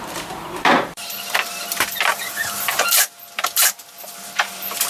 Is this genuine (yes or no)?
no